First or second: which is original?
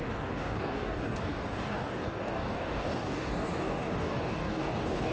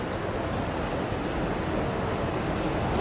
second